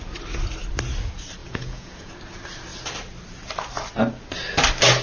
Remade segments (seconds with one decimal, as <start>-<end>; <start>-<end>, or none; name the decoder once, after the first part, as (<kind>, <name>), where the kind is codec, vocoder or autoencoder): 1.4-2.1 (vocoder, Vocos)